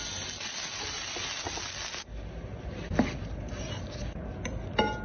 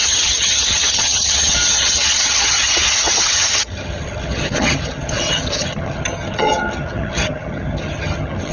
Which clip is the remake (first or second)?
second